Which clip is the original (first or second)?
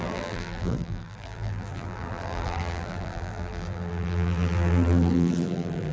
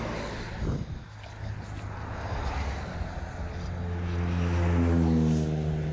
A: second